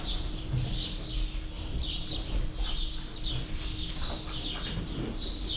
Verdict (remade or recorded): recorded